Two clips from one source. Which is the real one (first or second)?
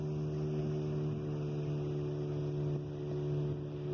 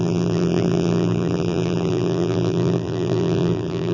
first